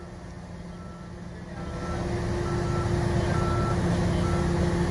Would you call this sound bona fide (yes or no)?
yes